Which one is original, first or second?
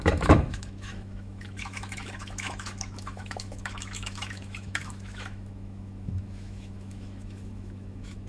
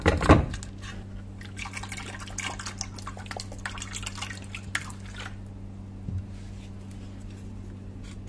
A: second